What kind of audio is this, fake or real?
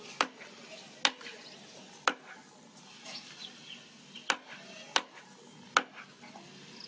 real